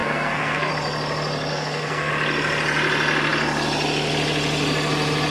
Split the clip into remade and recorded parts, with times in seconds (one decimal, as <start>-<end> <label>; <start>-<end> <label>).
0.0-0.7 remade; 0.7-1.5 recorded; 1.5-2.1 remade; 2.1-5.3 recorded